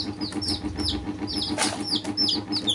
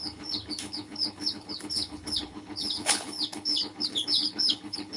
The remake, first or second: second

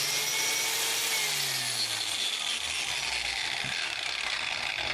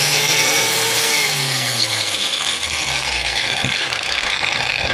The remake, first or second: second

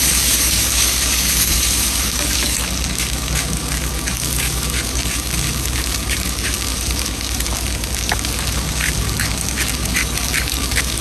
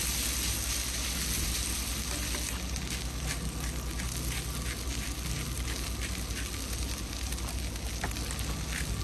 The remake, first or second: first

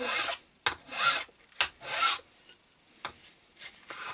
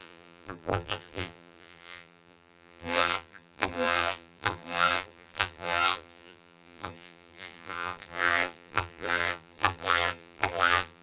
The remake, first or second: second